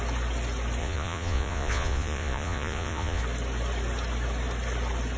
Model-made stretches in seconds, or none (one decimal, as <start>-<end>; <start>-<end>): 0.8-3.2